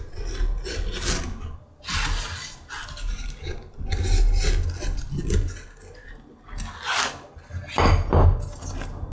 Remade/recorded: recorded